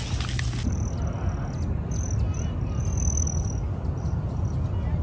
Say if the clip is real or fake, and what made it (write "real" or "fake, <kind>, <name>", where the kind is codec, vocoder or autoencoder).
real